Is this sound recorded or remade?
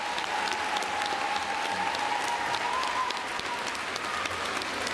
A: recorded